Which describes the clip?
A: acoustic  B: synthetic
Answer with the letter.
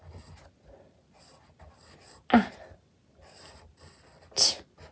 A